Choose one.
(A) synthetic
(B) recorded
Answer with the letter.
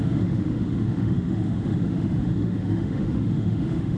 A